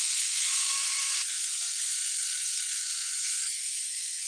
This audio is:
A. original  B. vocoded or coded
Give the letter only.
B